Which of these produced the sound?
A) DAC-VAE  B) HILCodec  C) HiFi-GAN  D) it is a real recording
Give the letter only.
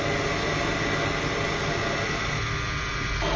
D